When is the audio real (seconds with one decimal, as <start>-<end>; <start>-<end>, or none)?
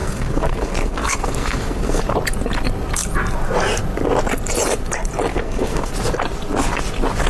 2.0-5.3; 5.9-7.3